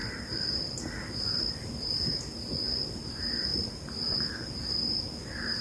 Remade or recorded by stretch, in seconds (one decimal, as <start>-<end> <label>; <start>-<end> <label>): 0.0-5.6 remade